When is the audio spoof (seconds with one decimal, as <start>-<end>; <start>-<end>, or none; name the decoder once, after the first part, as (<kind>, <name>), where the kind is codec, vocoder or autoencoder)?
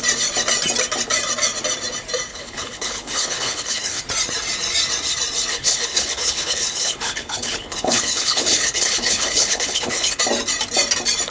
2.3-4.0 (codec, HILCodec); 5.5-10.2